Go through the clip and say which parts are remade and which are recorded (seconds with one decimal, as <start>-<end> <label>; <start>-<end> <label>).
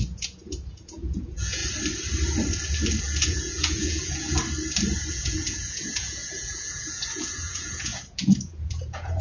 0.0-1.6 remade; 1.6-3.0 recorded; 3.0-4.3 remade; 4.3-5.1 recorded; 5.1-9.2 remade